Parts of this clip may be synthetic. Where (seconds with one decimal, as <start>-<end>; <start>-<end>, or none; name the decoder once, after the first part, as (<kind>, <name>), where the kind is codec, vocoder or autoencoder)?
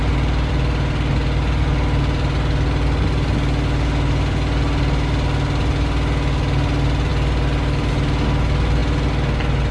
none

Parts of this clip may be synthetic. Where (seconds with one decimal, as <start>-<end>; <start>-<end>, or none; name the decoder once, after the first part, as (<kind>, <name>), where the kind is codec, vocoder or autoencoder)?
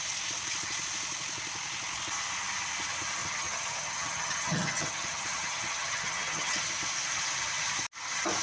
3.2-6.7 (vocoder, HiFi-GAN)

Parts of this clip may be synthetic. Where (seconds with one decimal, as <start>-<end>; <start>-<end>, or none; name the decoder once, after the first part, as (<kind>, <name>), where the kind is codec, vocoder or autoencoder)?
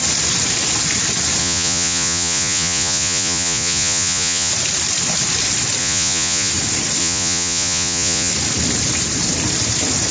1.4-4.5 (vocoder, Vocos); 5.8-6.5; 7.0-8.3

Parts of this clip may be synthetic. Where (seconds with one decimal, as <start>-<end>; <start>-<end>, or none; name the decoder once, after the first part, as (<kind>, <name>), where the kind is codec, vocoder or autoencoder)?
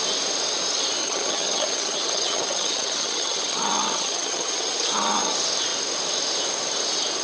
1.0-5.3 (vocoder, HiFi-GAN)